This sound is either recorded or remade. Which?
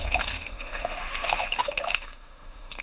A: remade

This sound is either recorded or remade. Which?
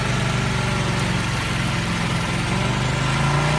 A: recorded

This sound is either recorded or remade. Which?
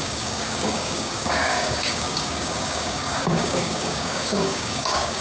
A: remade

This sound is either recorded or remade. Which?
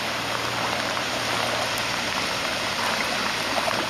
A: recorded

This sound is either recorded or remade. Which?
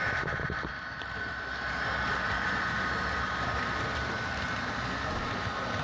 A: remade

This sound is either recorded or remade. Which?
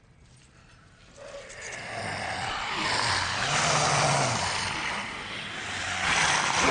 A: recorded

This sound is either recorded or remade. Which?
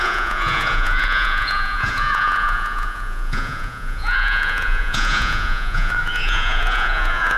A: remade